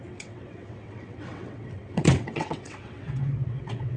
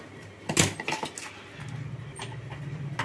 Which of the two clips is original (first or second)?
second